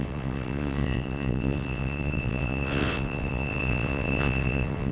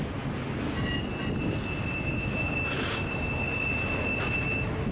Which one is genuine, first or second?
second